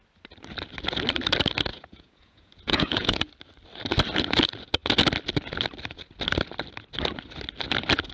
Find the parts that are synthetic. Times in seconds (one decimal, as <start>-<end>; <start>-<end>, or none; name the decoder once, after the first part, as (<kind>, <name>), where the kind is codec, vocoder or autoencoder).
1.7-3.3 (vocoder, Vocos)